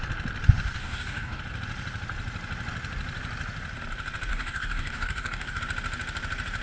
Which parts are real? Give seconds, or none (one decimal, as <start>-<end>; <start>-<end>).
0.0-0.8; 1.4-4.3; 5.6-6.6